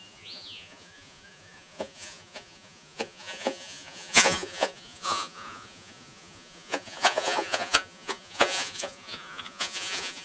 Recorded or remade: remade